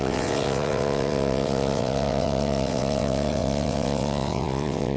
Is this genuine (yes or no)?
no